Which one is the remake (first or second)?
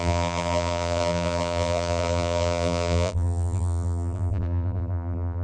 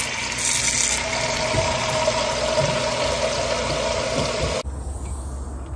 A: first